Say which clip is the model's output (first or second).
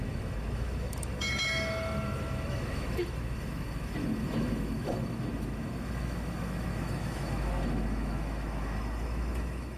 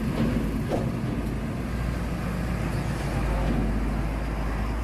first